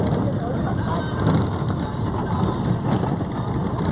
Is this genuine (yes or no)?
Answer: yes